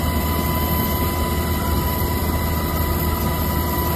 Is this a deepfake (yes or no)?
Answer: no